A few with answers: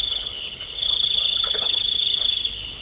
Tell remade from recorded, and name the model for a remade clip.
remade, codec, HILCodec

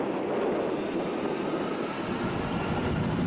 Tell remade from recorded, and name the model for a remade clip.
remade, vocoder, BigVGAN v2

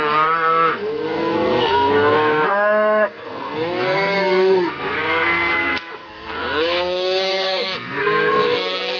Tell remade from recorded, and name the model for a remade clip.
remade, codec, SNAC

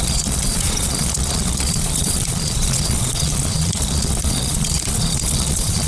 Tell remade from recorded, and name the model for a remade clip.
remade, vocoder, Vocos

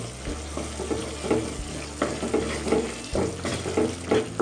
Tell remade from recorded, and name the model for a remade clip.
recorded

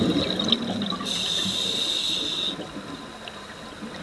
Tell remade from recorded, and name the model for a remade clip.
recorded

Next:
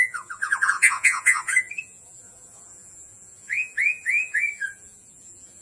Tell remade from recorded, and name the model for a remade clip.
remade, vocoder, Vocos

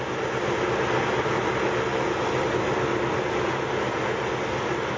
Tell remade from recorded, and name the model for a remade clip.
recorded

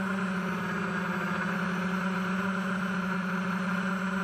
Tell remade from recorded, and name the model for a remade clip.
recorded